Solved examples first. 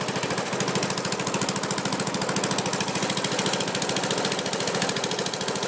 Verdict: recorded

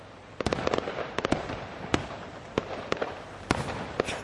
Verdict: remade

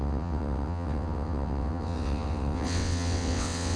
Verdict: remade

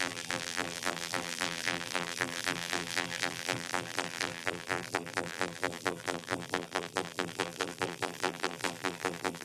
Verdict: remade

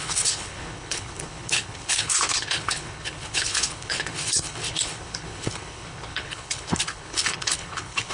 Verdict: remade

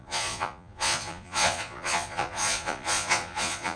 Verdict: remade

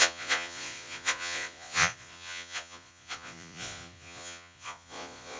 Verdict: remade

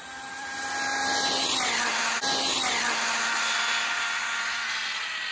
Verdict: recorded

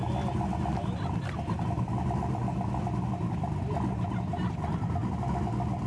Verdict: recorded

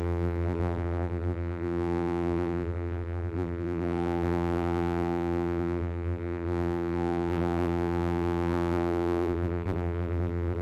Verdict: remade